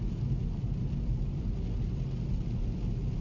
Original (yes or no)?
yes